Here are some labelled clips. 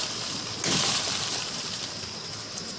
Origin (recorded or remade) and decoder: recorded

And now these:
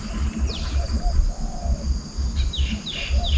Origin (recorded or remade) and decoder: recorded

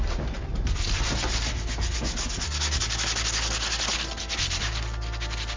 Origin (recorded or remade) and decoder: recorded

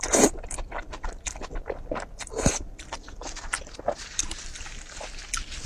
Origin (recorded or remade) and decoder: recorded